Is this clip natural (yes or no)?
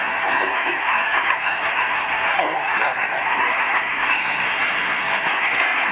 no